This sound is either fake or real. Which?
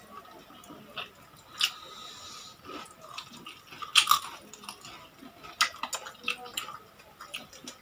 real